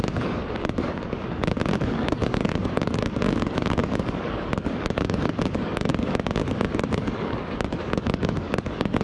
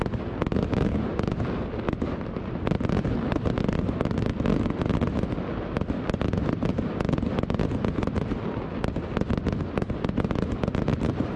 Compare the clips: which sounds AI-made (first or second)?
first